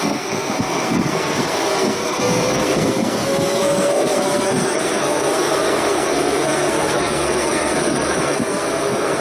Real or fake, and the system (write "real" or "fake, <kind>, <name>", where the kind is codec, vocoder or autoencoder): fake, codec, SNAC